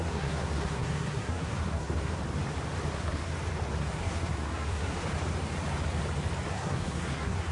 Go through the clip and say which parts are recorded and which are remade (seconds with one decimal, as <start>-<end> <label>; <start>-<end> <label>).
0.0-2.2 remade; 2.2-2.9 recorded; 2.9-3.3 remade; 3.3-3.8 recorded; 3.8-5.1 remade; 5.1-6.5 recorded; 6.5-7.5 remade